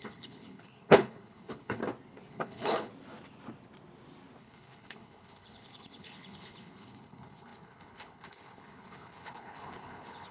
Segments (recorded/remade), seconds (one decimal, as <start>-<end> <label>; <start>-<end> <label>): 0.0-1.8 remade; 1.8-2.3 recorded; 2.3-2.9 remade; 2.9-4.4 recorded; 4.4-10.3 remade